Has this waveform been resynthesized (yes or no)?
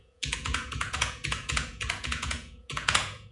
yes